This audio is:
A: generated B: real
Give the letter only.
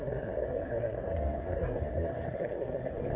A